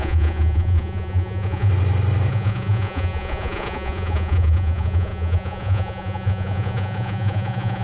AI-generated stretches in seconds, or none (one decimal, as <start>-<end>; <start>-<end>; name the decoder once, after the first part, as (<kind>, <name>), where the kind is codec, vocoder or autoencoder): 0.0-1.7 (vocoder, Vocos); 2.3-7.8